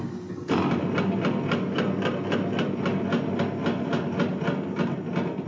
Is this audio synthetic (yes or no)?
no